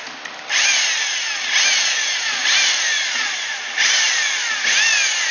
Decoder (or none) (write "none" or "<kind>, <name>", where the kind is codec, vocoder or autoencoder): none